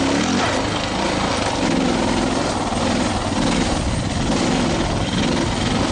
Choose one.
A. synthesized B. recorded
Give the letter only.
B